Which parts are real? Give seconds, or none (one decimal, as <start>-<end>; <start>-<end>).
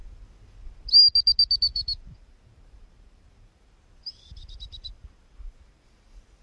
0.0-1.7; 3.6-4.3; 4.8-6.4